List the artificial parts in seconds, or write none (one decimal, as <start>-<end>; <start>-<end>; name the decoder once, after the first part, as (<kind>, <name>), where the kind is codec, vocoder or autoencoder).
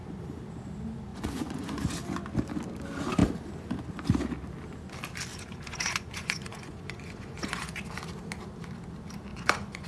1.1-1.9 (vocoder, Vocos); 5.3-7.8; 9.3-9.9